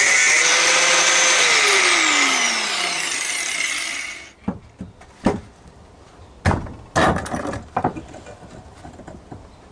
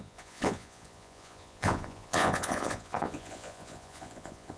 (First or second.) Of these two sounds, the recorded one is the first